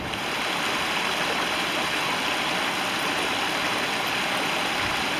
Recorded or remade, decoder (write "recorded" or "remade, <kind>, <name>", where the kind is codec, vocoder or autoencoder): recorded